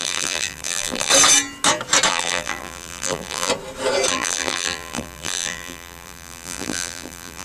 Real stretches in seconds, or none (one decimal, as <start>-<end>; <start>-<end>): 1.1-2.1; 3.5-4.1